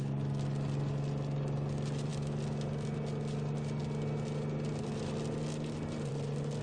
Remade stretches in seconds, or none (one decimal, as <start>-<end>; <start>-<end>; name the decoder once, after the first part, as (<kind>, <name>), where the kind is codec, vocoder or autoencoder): none